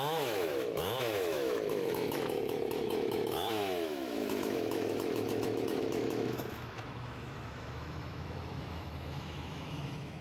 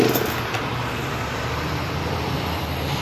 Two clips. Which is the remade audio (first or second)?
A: first